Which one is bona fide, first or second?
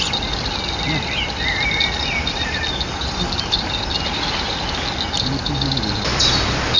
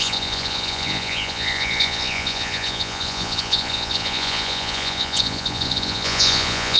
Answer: first